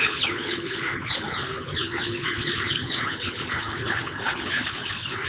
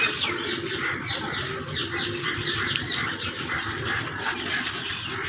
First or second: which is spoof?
first